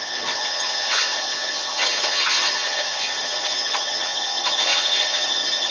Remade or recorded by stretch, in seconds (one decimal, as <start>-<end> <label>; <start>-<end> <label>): 0.0-5.7 remade